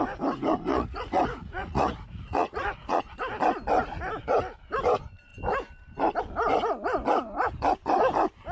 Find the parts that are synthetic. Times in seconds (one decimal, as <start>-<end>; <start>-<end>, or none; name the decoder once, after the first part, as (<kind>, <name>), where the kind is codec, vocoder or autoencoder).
0.7-3.0 (vocoder, Vocos)